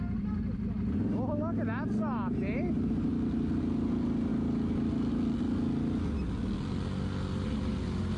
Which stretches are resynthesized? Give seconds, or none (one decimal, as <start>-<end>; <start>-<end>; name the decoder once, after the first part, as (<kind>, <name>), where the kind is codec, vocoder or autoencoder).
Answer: none